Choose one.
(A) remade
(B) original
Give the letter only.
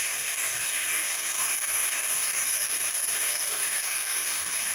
A